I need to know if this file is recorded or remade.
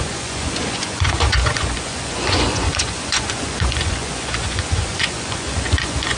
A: remade